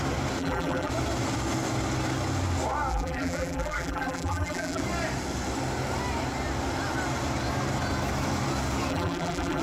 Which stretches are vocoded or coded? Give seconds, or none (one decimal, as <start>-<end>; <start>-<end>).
0.4-0.9; 2.9-4.8; 8.9-9.6